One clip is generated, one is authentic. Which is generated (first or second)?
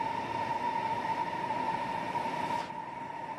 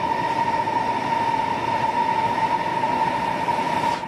first